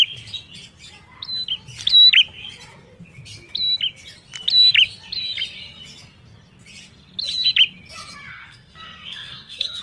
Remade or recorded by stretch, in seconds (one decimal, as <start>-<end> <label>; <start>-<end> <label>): 0.0-8.3 recorded; 8.3-9.8 remade